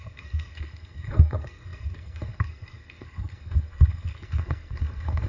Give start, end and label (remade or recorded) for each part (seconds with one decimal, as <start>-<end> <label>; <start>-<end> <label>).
0.0-5.3 remade